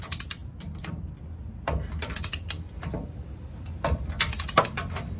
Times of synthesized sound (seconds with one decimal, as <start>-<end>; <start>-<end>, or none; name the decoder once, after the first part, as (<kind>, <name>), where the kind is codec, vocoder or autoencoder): none